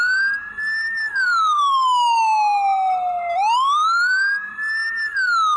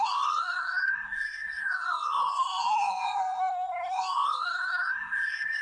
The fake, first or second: second